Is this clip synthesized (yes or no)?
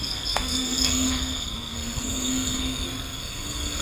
yes